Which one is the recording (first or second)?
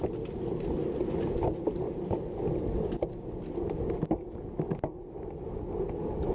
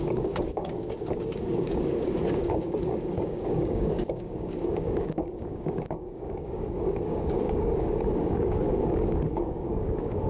first